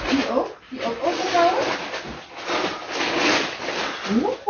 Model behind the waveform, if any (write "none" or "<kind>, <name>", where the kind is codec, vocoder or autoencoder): none